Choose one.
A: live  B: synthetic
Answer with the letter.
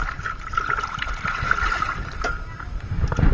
A